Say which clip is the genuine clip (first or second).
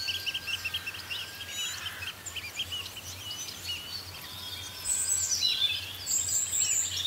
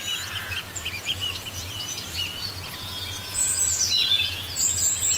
first